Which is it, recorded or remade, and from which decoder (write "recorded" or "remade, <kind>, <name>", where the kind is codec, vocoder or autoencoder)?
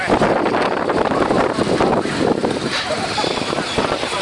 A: remade, vocoder, BigVGAN v2